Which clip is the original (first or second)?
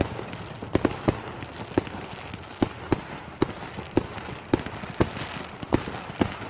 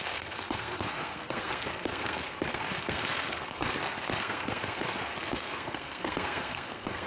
first